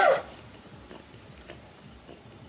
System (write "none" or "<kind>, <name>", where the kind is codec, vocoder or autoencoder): none